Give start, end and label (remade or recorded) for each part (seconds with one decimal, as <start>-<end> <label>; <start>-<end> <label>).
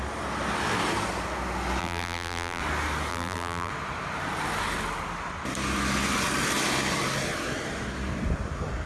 0.0-1.8 recorded; 1.8-2.6 remade; 2.6-3.1 recorded; 3.1-3.7 remade; 3.7-8.9 recorded